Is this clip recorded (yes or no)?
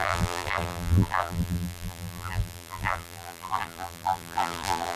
no